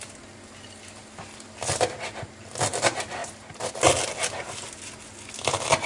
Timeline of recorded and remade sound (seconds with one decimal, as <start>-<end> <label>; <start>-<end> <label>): 0.0-5.9 recorded